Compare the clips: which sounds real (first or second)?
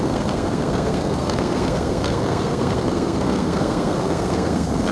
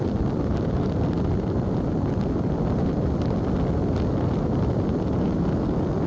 second